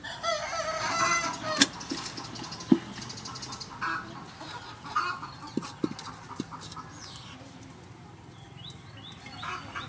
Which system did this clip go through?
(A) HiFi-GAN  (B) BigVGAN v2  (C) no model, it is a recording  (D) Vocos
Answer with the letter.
C